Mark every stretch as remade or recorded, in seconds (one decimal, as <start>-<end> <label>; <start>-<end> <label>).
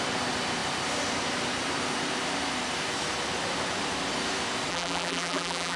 0.0-4.7 recorded; 4.7-5.8 remade